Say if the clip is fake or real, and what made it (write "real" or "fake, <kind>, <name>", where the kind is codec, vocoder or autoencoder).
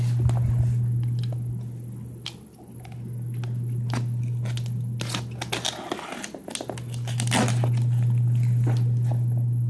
real